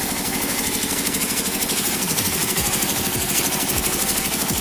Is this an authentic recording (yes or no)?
no